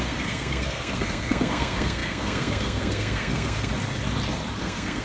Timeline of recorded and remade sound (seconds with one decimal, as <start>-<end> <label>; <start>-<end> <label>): 0.0-3.7 remade; 3.7-4.6 recorded; 4.6-5.0 remade